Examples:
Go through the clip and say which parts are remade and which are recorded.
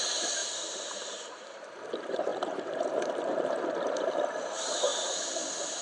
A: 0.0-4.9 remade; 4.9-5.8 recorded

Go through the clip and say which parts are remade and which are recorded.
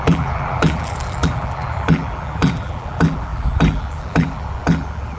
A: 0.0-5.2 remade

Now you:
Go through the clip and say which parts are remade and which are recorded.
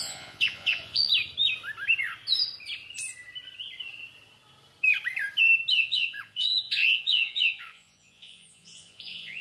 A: 0.0-1.1 remade; 1.1-5.8 recorded; 5.8-9.4 remade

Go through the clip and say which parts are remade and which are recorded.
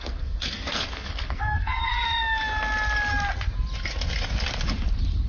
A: 0.0-2.1 remade; 2.1-5.3 recorded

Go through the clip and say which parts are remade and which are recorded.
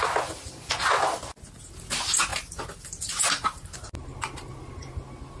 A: 0.0-5.4 recorded